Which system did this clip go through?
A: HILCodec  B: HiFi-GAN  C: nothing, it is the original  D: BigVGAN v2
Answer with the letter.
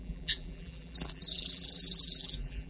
D